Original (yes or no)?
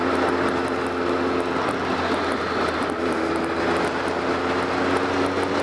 yes